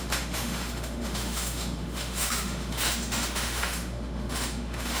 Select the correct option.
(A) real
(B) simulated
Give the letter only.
B